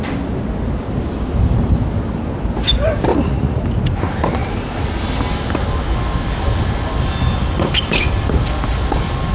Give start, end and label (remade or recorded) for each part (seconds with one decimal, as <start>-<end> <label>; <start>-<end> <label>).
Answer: 0.0-3.1 recorded; 3.1-3.6 remade; 3.6-9.3 recorded